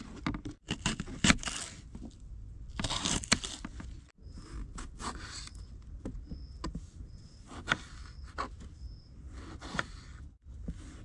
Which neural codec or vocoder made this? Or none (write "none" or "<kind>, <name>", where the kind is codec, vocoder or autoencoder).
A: none